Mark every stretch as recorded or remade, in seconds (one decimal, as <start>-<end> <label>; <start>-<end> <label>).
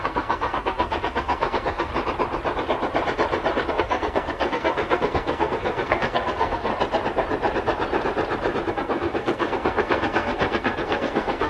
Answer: 0.0-1.9 remade; 1.9-3.7 recorded; 3.7-6.7 remade; 6.7-8.7 recorded; 8.7-11.5 remade